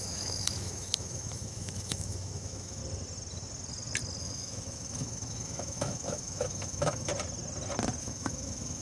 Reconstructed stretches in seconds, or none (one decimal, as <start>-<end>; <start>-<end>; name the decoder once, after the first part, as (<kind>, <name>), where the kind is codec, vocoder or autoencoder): 0.0-2.8 (autoencoder, DAC-VAE); 4.2-7.1; 8.0-8.8